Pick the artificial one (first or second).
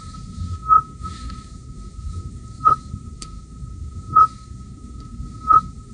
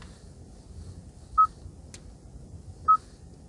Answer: first